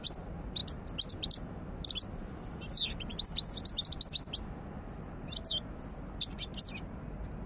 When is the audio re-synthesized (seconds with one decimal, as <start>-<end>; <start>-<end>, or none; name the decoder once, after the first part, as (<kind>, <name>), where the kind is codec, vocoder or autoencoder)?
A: none